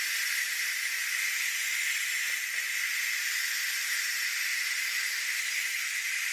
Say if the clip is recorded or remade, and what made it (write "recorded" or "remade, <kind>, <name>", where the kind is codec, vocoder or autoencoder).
recorded